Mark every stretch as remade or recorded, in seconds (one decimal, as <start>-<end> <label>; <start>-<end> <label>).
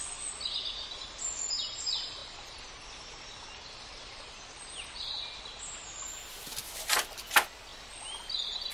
0.0-8.7 recorded